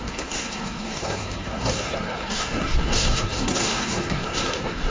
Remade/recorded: remade